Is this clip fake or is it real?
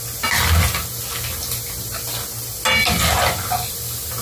real